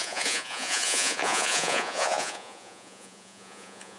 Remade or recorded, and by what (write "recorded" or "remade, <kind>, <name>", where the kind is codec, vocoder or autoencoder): remade, vocoder, Vocos